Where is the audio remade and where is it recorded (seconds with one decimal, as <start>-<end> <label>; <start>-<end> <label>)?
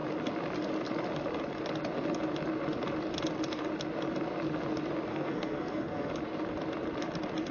0.0-5.1 recorded; 5.1-6.1 remade; 6.1-7.5 recorded